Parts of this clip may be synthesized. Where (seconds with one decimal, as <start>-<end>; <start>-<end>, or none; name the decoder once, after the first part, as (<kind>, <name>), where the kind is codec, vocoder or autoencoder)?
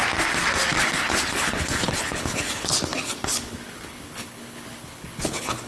0.8-5.7 (codec, HILCodec)